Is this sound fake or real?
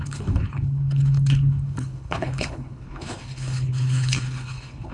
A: fake